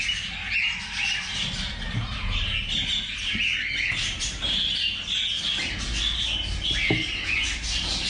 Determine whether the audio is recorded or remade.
recorded